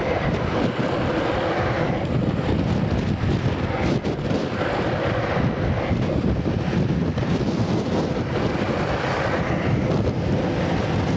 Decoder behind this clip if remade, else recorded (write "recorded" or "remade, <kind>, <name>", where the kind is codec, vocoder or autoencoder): recorded